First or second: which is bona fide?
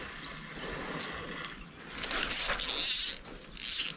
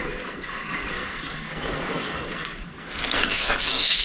first